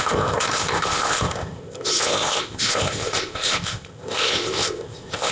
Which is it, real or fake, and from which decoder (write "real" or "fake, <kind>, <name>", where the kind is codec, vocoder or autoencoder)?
fake, codec, ZipCodec